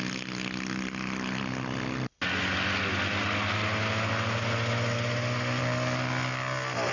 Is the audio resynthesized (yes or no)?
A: no